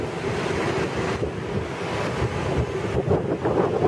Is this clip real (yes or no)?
yes